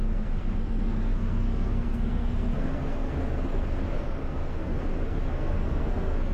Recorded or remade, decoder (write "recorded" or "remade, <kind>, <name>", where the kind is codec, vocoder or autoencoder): remade, codec, SNAC